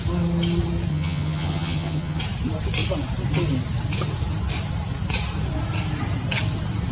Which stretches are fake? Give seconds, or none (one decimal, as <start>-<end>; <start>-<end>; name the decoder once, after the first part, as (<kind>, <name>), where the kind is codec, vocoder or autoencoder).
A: 0.9-2.2 (vocoder, HiFi-GAN)